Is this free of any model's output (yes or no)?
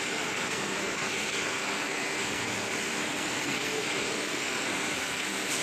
no